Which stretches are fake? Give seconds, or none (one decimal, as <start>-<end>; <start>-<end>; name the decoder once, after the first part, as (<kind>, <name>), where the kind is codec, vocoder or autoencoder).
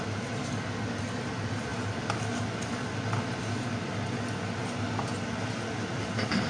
none